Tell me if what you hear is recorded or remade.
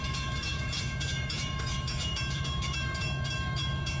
remade